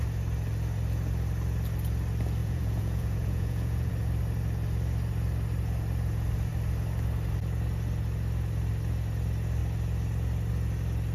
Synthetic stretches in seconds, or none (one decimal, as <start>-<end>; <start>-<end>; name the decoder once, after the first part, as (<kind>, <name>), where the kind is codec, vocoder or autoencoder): 2.4-3.9 (vocoder, Vocos)